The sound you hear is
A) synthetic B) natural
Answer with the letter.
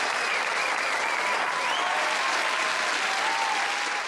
B